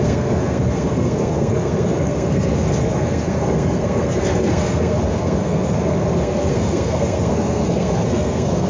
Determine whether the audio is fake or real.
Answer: fake